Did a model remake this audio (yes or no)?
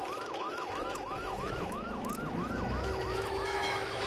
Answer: yes